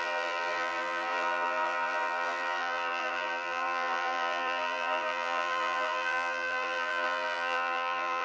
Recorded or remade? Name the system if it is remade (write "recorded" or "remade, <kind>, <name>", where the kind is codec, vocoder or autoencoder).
remade, vocoder, BigVGAN v2